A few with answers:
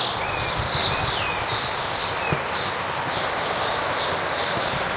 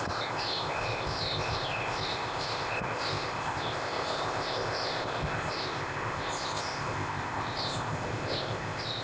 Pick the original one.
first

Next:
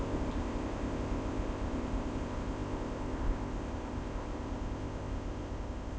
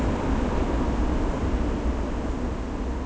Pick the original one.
second